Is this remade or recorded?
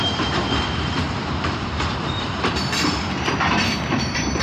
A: remade